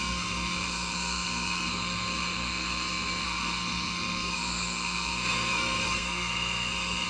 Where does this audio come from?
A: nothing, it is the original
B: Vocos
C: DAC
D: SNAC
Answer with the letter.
D